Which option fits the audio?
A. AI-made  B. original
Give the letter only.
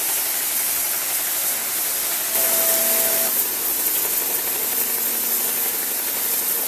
B